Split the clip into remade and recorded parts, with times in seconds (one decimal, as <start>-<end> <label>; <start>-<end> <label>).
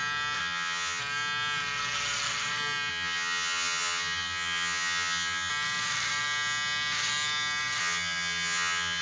0.0-0.4 recorded; 0.4-1.0 remade; 1.0-2.9 recorded; 2.9-5.5 remade; 5.5-7.8 recorded; 7.8-9.0 remade